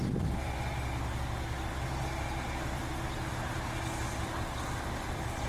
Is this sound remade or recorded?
recorded